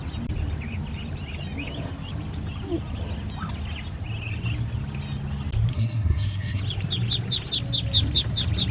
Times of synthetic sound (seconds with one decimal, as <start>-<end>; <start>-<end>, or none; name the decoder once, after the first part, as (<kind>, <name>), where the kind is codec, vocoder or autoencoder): 5.7-6.6 (codec, SNAC)